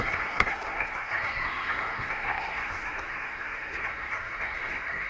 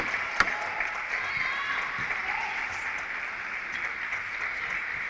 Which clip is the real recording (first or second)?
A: second